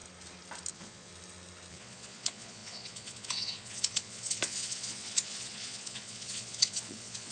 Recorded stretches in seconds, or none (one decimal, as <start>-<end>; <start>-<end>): 0.0-0.7; 1.1-1.7